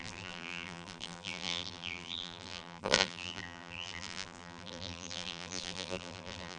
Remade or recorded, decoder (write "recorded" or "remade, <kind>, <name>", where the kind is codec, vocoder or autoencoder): remade, vocoder, BigVGAN v2